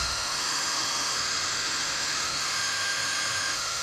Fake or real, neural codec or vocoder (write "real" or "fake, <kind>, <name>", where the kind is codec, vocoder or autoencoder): fake, autoencoder, DAC-VAE